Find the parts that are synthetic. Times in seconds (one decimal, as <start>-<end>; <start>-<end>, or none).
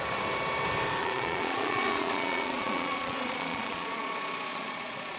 1.0-4.1; 4.5-5.2